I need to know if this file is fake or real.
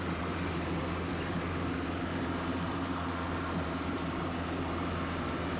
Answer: fake